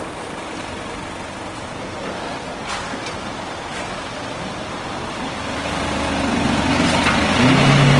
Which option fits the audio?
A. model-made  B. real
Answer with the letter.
B